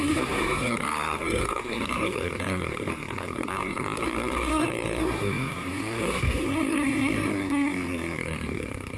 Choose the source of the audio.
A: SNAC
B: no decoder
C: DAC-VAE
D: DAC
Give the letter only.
A